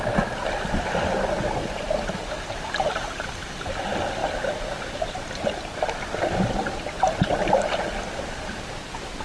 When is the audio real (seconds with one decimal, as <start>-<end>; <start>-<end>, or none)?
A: 0.0-9.2